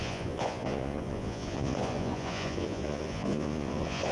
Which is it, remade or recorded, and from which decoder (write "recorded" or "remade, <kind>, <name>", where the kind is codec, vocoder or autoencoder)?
remade, vocoder, Vocos